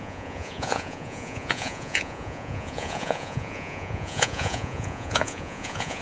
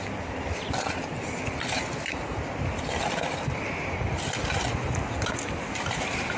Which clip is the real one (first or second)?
second